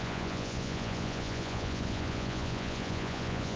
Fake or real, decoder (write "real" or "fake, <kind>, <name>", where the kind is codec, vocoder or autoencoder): fake, vocoder, Vocos